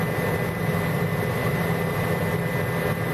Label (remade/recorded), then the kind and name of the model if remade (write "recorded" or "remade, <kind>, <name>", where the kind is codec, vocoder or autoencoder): recorded